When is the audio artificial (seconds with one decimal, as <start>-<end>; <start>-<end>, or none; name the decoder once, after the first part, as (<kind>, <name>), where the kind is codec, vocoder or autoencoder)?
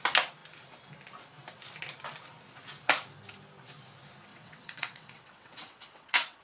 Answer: 4.3-6.4 (vocoder, WaveNeXt)